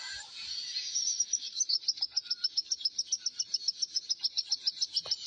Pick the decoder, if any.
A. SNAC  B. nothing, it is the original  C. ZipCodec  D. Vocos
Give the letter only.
B